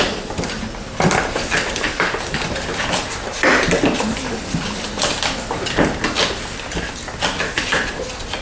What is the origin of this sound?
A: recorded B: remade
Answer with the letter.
A